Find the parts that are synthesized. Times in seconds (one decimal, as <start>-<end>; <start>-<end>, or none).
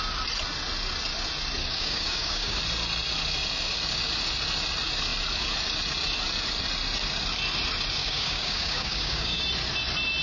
1.6-2.6; 8.0-9.4